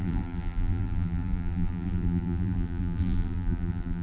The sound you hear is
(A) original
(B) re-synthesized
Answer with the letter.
B